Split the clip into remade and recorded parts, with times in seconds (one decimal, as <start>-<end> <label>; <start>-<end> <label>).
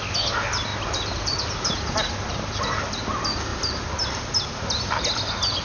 0.0-0.7 recorded; 0.7-1.9 remade; 1.9-3.5 recorded; 3.5-4.8 remade; 4.8-5.6 recorded